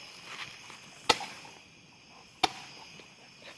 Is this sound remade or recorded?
recorded